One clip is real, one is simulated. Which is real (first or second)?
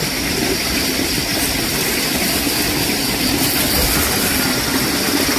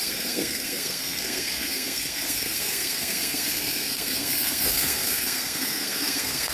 first